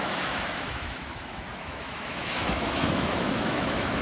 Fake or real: fake